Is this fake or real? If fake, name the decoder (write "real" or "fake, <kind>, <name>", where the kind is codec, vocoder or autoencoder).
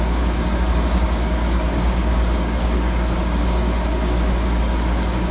fake, codec, DAC